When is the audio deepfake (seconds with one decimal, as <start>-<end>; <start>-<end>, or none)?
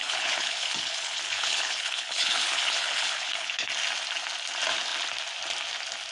0.0-3.7